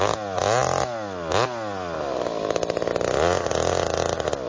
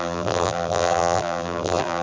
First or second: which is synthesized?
second